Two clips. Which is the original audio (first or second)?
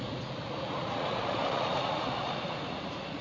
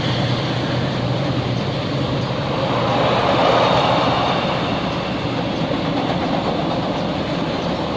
second